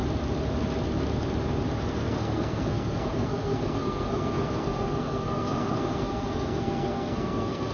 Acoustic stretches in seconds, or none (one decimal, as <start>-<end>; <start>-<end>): 0.0-1.9